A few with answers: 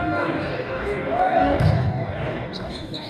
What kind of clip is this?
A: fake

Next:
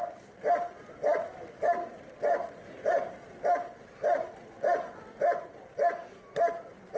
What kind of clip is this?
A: real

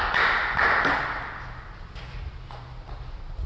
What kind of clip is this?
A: real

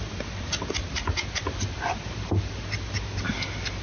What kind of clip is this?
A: real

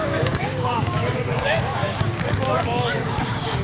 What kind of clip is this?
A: fake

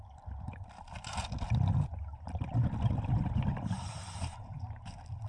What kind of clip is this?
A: real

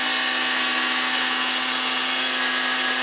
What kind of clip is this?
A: real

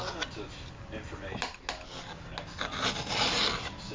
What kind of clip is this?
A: real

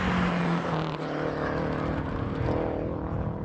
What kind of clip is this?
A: real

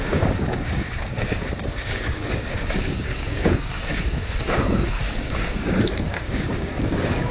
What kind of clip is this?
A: fake